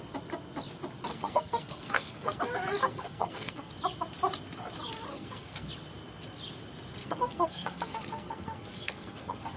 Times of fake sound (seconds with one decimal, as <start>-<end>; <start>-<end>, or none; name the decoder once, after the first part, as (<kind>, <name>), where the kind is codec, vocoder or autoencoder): 1.1-2.4 (codec, SNAC); 2.8-3.7; 5.1-5.7; 7.0-9.6